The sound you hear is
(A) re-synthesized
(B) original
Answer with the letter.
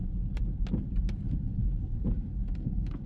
A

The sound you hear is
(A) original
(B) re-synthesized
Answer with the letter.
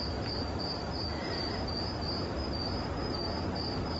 B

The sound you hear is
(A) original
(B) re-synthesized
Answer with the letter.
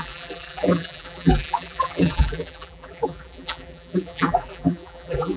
B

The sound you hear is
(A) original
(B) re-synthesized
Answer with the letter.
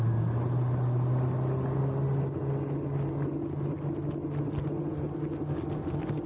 A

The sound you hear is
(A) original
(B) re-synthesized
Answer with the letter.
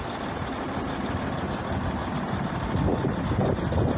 A